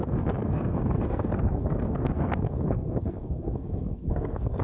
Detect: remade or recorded remade